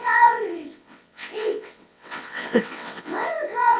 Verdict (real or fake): fake